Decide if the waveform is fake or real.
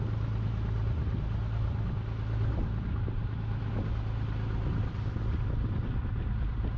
real